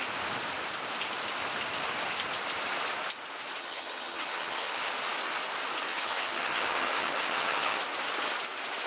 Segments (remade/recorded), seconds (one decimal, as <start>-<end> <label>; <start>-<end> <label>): 0.0-3.6 recorded; 3.6-4.9 remade; 4.9-5.9 recorded; 5.9-7.8 remade; 7.8-8.9 recorded